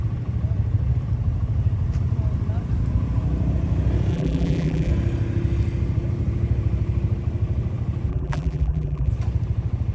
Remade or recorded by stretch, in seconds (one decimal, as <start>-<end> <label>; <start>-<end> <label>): 0.0-4.1 recorded; 4.1-4.9 remade; 4.9-8.1 recorded; 8.1-9.1 remade; 9.1-9.9 recorded